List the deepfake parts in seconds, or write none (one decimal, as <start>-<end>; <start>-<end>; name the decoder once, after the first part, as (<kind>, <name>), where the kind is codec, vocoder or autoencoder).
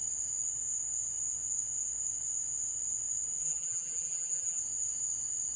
3.4-4.6 (vocoder, BigVGAN v2)